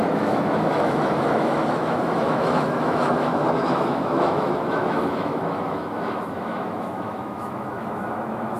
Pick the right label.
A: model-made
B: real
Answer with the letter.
A